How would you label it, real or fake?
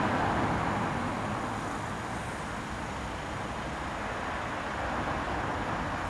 real